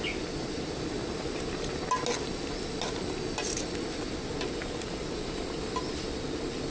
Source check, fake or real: real